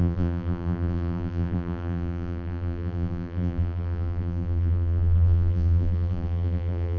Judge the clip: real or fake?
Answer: fake